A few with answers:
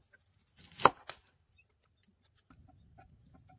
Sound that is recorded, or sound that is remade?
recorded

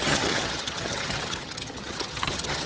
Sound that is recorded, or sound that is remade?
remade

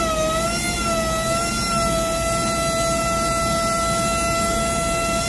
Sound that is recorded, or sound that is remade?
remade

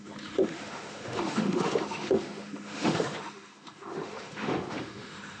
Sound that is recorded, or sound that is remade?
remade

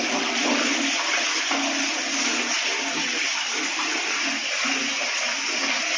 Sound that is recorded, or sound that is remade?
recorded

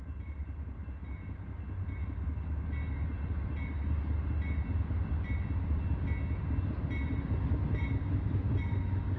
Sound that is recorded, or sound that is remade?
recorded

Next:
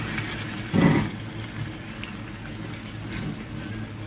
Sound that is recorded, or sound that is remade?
recorded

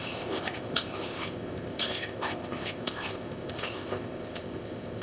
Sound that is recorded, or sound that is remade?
remade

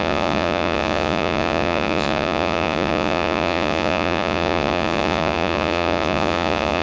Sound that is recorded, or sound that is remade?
remade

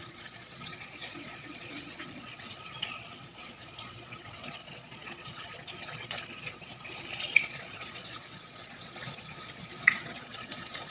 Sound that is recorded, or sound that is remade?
remade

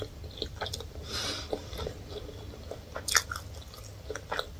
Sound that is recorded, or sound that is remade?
recorded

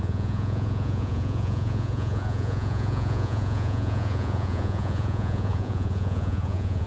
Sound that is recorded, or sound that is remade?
remade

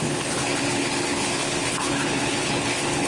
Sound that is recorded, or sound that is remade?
remade